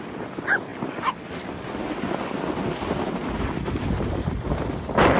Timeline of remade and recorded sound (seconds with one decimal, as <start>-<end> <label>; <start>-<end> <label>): 0.0-5.2 recorded

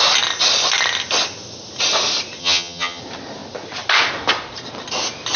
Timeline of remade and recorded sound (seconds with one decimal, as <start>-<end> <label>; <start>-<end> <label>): 0.0-2.4 recorded; 2.4-3.0 remade; 3.0-5.4 recorded